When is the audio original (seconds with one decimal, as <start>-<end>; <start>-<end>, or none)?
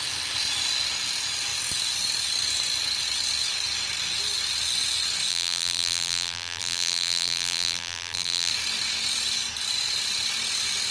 0.0-5.3; 8.5-10.9